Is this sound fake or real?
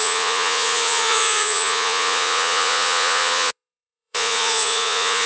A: fake